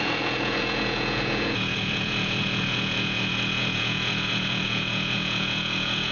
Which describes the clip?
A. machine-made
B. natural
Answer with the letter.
A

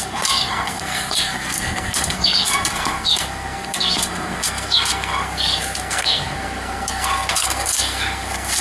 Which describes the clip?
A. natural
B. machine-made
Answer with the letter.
B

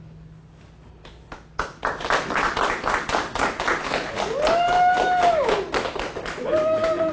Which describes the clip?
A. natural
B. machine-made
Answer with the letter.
A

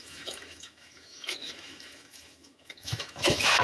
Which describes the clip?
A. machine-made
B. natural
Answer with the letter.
A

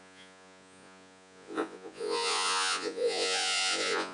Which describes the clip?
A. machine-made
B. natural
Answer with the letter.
A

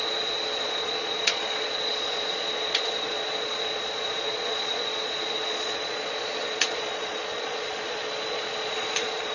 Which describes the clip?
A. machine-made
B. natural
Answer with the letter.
A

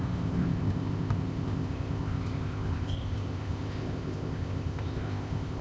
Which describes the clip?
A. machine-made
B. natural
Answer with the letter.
A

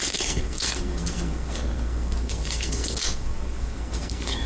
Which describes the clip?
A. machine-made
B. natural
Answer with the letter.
A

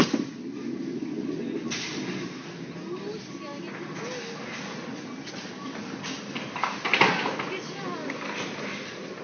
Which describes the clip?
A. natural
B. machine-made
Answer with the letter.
A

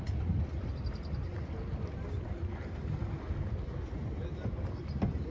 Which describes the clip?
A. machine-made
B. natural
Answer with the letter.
B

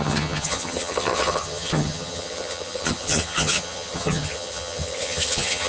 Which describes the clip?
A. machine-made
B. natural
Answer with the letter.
A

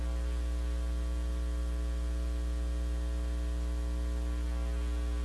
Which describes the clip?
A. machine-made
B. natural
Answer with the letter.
B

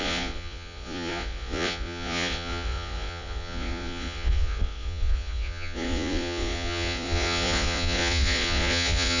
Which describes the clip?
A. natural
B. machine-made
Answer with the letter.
B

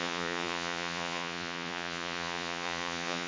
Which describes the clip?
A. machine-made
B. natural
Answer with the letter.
A